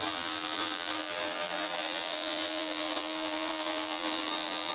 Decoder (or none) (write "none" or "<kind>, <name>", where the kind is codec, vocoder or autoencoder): vocoder, BigVGAN v2